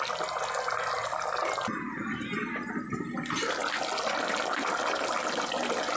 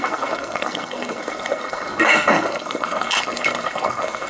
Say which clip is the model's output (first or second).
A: second